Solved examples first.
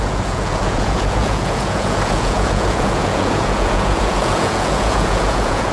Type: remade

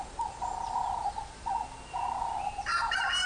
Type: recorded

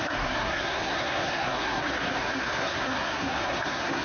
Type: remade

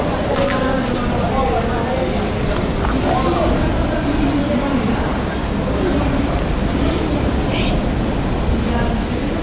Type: recorded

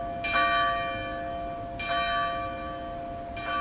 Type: recorded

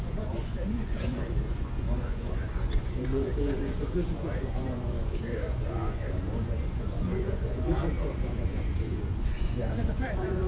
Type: remade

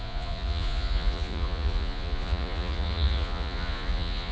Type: remade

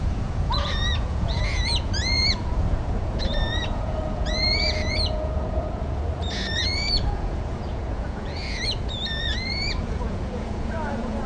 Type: remade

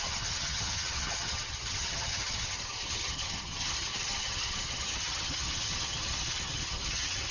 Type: remade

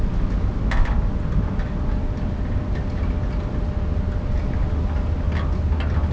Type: recorded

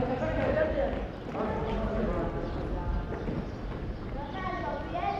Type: recorded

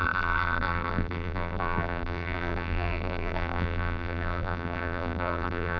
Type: remade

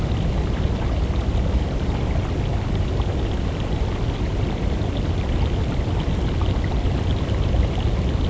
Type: recorded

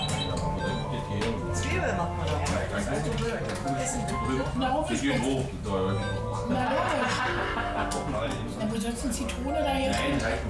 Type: recorded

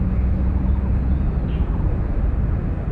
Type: recorded